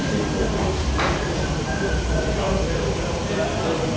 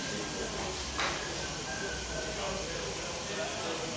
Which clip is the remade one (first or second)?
first